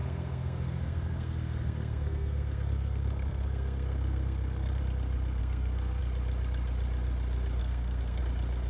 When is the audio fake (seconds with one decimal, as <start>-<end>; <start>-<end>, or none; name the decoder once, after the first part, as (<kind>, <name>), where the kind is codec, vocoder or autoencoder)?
0.0-4.8 (codec, SNAC); 5.4-6.0; 7.6-8.2